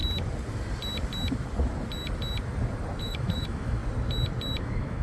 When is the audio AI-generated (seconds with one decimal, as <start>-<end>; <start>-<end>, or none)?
3.0-3.8; 4.6-5.0